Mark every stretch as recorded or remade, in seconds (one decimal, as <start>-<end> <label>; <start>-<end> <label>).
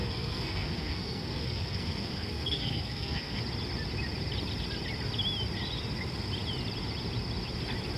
0.0-3.4 remade; 3.4-8.0 recorded